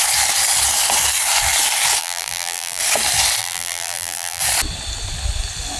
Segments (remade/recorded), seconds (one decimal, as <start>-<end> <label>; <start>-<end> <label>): 0.0-2.0 recorded; 2.0-2.8 remade; 2.8-3.4 recorded; 3.4-4.4 remade; 4.4-5.8 recorded